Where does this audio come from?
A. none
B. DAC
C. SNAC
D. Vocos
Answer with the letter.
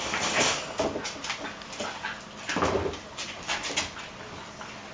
A